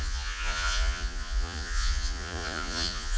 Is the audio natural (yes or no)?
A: no